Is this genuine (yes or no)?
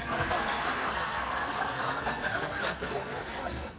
no